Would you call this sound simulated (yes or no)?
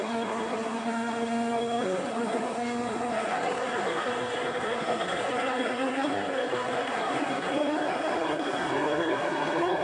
yes